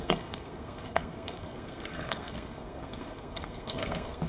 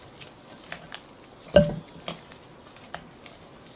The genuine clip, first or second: second